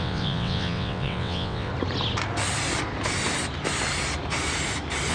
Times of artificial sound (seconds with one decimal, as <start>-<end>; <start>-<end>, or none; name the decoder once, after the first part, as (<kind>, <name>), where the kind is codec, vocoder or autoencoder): 0.0-1.7 (vocoder, WaveNeXt)